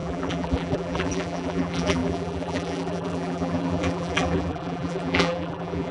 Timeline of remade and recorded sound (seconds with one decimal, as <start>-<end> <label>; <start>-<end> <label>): 0.0-5.9 remade